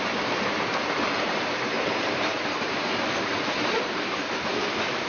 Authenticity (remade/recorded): remade